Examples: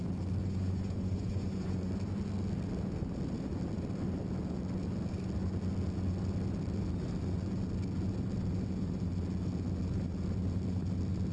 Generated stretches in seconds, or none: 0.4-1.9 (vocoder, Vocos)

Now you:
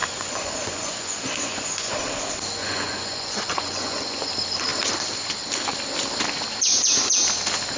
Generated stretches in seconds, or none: 0.0-1.9 (vocoder, Vocos); 2.6-4.3